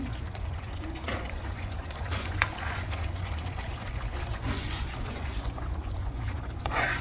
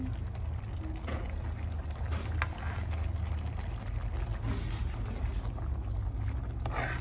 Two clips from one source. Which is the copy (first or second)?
first